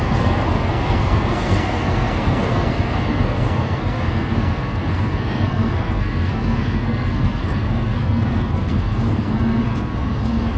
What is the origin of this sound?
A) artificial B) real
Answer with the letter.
A